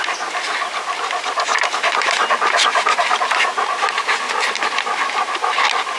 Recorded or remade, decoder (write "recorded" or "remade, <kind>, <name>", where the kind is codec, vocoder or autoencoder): recorded